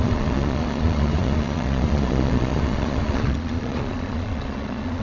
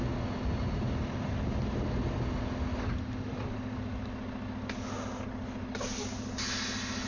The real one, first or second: second